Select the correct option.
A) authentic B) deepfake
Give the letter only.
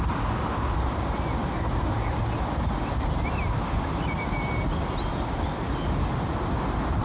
A